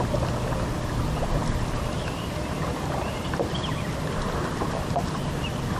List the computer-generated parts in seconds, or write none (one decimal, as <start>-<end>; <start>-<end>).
1.4-3.7